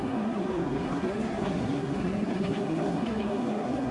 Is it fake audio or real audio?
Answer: fake